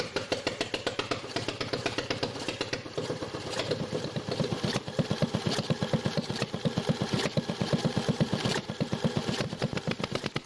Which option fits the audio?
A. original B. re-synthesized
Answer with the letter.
B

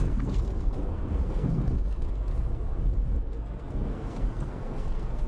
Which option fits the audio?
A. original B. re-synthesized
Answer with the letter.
B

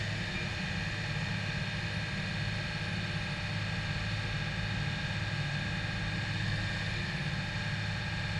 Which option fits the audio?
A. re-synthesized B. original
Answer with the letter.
B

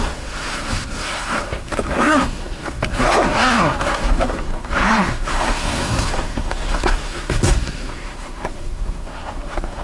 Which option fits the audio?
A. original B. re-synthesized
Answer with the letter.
B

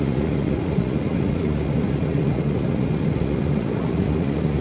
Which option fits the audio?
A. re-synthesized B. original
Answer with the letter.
A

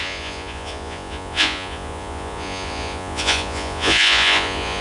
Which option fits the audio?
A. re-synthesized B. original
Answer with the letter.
A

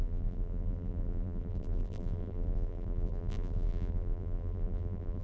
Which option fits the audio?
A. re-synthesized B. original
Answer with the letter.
A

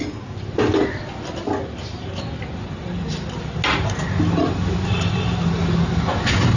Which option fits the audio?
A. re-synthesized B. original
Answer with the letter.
B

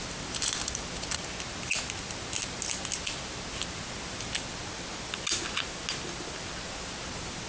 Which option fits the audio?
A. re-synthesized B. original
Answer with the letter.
B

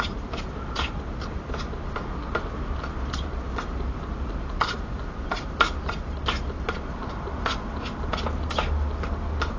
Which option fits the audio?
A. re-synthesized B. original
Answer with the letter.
B